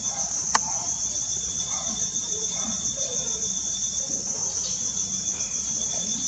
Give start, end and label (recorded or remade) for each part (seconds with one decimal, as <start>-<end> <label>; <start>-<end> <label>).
0.0-4.4 remade; 4.4-5.4 recorded; 5.4-6.3 remade

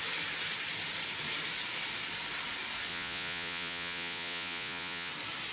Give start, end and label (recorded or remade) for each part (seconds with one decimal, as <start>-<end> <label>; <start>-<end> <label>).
0.0-2.9 recorded; 2.9-5.1 remade; 5.1-5.5 recorded

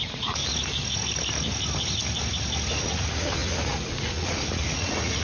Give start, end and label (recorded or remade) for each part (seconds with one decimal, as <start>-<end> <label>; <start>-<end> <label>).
0.0-0.4 remade; 0.4-2.7 recorded; 2.7-5.2 remade

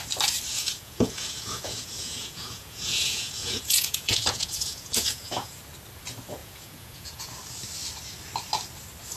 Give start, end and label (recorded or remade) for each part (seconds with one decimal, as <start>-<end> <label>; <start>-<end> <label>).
0.0-0.5 recorded; 0.5-5.6 remade; 5.6-6.4 recorded; 6.4-7.3 remade; 7.3-9.2 recorded

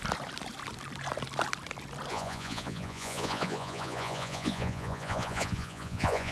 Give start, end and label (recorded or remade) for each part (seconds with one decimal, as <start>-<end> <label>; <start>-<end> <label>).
0.0-2.1 recorded; 2.1-6.3 remade

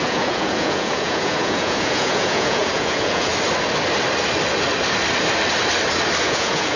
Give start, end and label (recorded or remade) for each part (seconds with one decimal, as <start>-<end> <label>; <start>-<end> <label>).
0.0-3.3 remade; 3.3-6.2 recorded; 6.2-6.8 remade